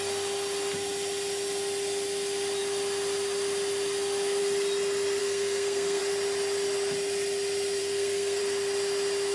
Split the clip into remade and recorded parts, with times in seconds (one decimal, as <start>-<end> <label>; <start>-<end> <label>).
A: 0.0-5.2 recorded; 5.2-6.0 remade; 6.0-7.8 recorded; 7.8-8.4 remade; 8.4-9.3 recorded